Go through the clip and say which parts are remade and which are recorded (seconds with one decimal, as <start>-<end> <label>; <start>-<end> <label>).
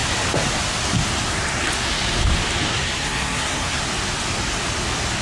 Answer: 0.0-2.7 recorded; 2.7-3.8 remade; 3.8-5.2 recorded